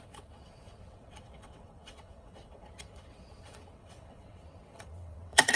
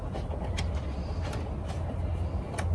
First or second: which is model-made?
first